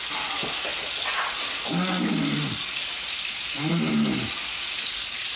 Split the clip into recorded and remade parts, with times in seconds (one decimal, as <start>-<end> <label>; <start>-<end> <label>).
0.0-5.4 recorded